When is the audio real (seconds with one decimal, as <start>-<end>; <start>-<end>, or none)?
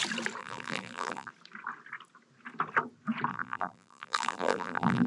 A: 0.0-0.4; 1.3-3.3